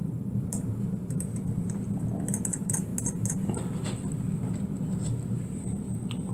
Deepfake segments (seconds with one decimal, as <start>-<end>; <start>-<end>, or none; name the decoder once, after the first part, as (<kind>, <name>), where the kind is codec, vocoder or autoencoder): 0.0-1.3 (vocoder, BigVGAN v2); 2.5-2.9